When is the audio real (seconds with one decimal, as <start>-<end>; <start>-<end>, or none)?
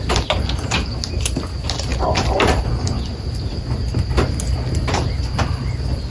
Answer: 0.0-6.1